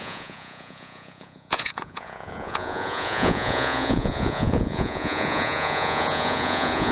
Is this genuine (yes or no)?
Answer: no